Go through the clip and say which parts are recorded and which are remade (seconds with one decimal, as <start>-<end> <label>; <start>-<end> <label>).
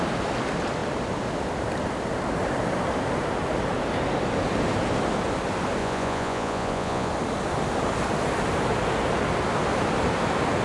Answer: 0.0-5.8 recorded; 5.8-7.1 remade; 7.1-10.6 recorded